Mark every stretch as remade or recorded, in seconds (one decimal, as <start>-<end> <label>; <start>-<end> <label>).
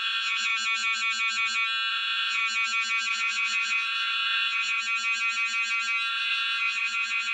0.0-0.5 remade; 0.5-1.9 recorded; 1.9-2.4 remade; 2.4-3.1 recorded; 3.1-4.8 remade; 4.8-6.1 recorded; 6.1-7.3 remade